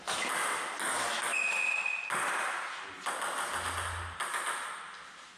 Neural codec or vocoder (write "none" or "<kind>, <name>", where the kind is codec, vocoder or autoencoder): none